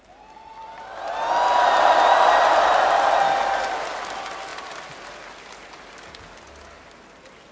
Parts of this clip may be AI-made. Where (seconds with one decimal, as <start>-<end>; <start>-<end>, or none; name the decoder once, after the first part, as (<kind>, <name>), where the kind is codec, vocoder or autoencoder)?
4.5-5.2 (vocoder, BigVGAN v2)